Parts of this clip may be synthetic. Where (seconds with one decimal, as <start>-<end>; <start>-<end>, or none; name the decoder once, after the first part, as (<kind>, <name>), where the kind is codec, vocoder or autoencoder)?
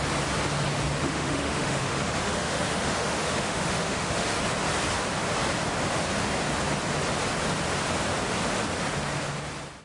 1.0-4.4 (autoencoder, DAC-VAE)